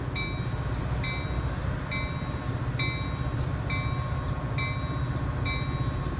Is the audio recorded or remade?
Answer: recorded